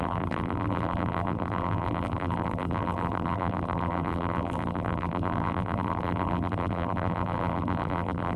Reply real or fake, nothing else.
fake